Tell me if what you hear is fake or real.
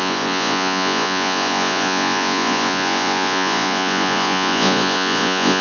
fake